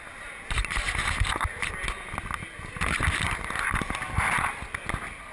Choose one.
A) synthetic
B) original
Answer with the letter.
B